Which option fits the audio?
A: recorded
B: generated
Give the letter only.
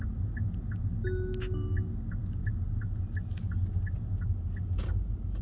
A